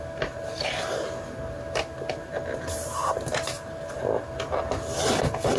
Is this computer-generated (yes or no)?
no